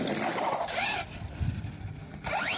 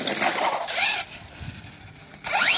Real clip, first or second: second